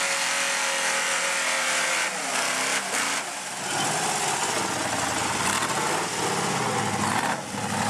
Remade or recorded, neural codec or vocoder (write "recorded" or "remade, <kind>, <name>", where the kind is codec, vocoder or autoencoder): recorded